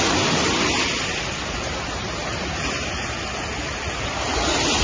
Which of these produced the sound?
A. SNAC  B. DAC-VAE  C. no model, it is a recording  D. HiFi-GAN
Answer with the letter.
C